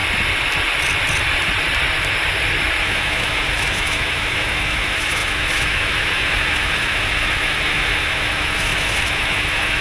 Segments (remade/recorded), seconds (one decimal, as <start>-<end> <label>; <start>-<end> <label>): 0.0-2.8 recorded; 2.8-9.8 remade